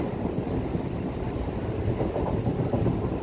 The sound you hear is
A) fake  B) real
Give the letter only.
B